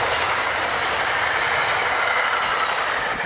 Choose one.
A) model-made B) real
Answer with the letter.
B